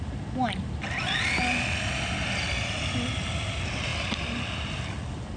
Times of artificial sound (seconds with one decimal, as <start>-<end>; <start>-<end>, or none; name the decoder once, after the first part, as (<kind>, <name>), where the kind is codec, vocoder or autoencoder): none